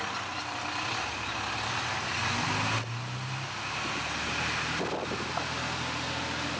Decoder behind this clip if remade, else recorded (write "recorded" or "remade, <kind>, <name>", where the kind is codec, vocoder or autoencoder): recorded